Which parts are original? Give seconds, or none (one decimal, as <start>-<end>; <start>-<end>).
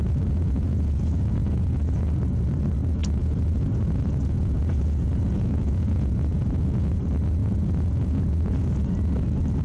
1.8-3.0; 7.0-7.4; 9.1-9.6